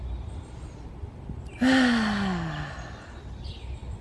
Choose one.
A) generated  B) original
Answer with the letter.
B